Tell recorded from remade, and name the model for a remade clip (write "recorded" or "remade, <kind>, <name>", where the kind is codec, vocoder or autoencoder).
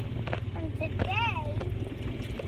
recorded